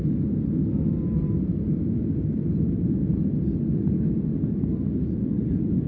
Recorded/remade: recorded